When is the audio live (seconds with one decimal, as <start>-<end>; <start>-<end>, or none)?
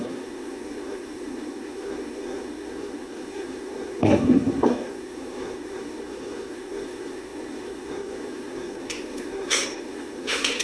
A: none